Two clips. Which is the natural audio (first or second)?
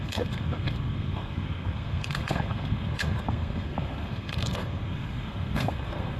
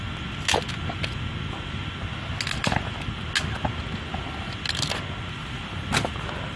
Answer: second